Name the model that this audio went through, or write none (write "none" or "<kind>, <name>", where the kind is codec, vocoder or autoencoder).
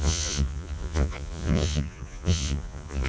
vocoder, Vocos